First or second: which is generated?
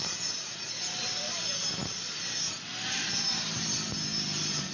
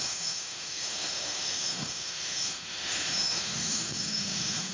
second